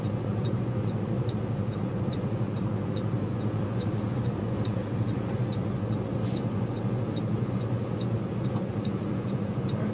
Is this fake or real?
fake